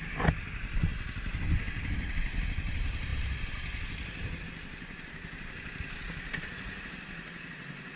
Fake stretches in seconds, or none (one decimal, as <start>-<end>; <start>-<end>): none